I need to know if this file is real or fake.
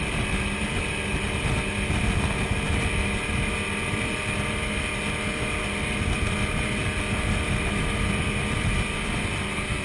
real